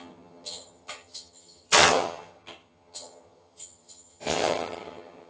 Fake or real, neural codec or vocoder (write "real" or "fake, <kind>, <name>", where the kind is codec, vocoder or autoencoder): fake, vocoder, HiFi-GAN